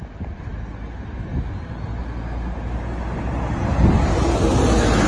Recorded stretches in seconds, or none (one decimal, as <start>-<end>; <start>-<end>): 0.0-5.1